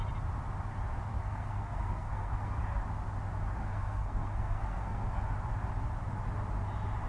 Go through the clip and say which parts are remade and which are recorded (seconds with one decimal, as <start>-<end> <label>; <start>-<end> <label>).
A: 0.0-1.1 recorded; 1.1-2.6 remade; 2.6-3.6 recorded; 3.6-5.2 remade; 5.2-7.1 recorded